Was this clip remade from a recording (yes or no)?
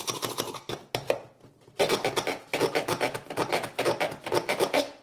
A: no